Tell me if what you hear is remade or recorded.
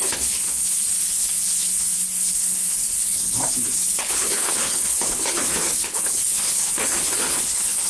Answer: remade